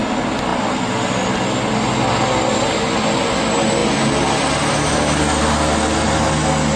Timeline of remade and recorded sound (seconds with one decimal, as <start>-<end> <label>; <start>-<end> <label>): 0.0-6.8 recorded